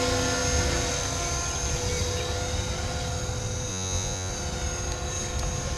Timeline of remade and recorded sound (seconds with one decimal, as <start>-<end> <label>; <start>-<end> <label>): 0.0-3.7 recorded; 3.7-4.3 remade; 4.3-5.8 recorded